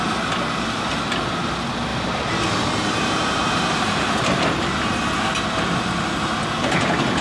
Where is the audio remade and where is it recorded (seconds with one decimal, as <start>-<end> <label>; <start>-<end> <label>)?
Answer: 0.0-0.9 recorded; 0.9-1.5 remade; 1.5-1.9 recorded; 1.9-4.9 remade; 4.9-7.2 recorded